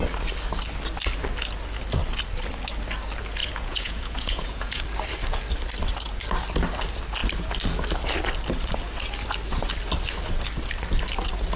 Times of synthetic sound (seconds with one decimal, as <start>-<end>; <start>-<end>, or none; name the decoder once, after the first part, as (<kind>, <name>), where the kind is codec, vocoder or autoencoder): 3.4-4.8 (vocoder, Vocos)